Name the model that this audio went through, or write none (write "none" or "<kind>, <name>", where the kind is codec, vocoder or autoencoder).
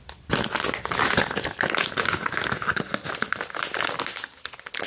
none